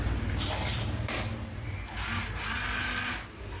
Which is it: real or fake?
real